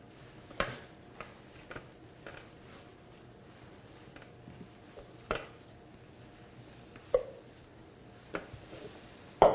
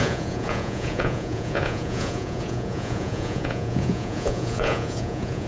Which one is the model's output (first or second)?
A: second